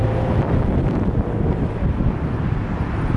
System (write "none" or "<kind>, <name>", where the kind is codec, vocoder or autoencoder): none